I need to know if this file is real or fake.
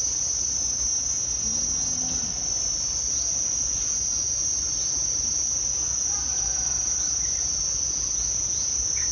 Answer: real